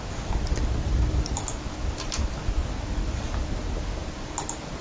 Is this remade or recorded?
recorded